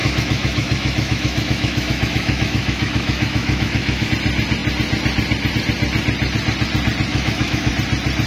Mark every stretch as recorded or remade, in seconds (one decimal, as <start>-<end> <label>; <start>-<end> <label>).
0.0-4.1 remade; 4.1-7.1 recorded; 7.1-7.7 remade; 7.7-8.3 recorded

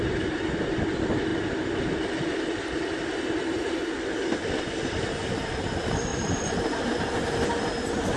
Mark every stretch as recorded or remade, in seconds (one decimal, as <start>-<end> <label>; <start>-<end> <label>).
0.0-8.2 recorded

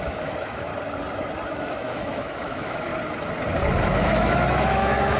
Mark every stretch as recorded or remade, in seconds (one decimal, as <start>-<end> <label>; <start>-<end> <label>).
0.0-0.7 remade; 0.7-1.5 recorded; 1.5-2.9 remade; 2.9-3.8 recorded; 3.8-5.2 remade